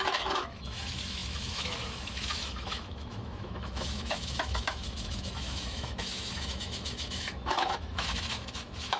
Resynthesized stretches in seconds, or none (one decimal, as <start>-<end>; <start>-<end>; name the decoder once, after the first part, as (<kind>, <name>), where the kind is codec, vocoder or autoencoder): 0.0-9.0 (autoencoder, DAC-VAE)